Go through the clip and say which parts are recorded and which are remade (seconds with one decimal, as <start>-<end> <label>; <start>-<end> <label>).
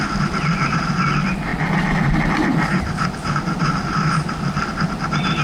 0.0-5.4 recorded